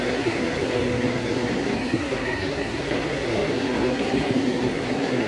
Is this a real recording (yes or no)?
no